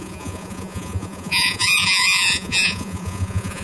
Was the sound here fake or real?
fake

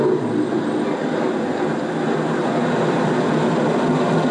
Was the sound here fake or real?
real